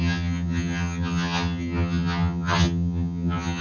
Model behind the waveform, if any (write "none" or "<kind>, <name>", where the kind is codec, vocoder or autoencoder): vocoder, HiFi-GAN